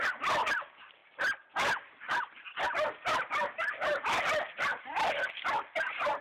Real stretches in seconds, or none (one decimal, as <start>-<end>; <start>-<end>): 0.0-6.2